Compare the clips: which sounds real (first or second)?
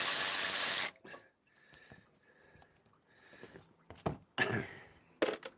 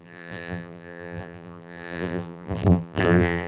first